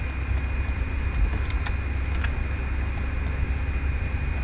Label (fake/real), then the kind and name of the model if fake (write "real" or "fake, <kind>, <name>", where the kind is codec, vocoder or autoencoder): real